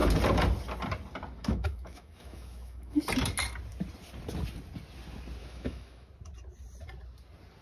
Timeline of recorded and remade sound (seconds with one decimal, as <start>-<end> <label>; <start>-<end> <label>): 0.0-1.4 recorded; 1.4-3.0 remade; 3.0-5.4 recorded; 5.4-6.1 remade; 6.1-7.6 recorded

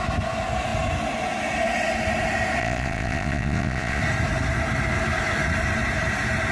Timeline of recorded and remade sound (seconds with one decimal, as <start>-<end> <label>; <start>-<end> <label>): 0.0-2.6 recorded; 2.6-4.0 remade; 4.0-6.5 recorded

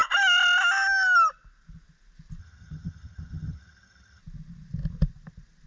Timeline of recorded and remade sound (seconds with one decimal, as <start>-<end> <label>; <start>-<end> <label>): 0.0-2.4 recorded; 2.4-4.2 remade; 4.2-5.7 recorded

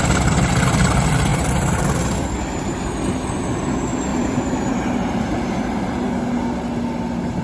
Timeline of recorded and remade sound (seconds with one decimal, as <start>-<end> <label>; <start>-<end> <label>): 0.0-4.1 recorded; 4.1-5.4 remade; 5.4-7.4 recorded

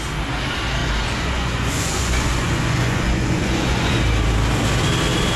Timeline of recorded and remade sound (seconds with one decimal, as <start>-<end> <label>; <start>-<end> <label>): 0.0-0.8 recorded; 0.8-4.0 remade; 4.0-5.4 recorded

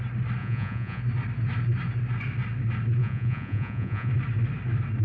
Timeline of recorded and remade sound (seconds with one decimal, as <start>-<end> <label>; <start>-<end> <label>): 0.0-0.4 recorded; 0.4-1.0 remade; 1.0-3.0 recorded; 3.0-4.1 remade; 4.1-5.0 recorded

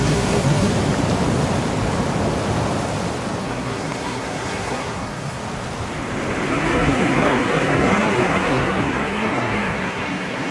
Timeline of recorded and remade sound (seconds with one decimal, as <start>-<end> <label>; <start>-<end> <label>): 0.0-0.7 remade; 0.7-3.4 recorded; 3.4-5.4 remade; 5.4-6.5 recorded; 6.5-10.5 remade

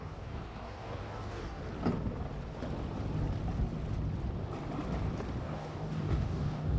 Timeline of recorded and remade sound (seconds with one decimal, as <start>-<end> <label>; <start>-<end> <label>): 0.0-1.6 remade; 1.6-5.4 recorded; 5.4-6.8 remade